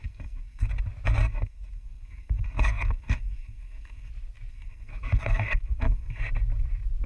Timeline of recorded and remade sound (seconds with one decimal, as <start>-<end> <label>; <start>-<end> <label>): 0.0-0.7 remade; 0.7-1.2 recorded; 1.2-4.1 remade; 4.1-4.5 recorded; 4.5-6.2 remade; 6.2-7.1 recorded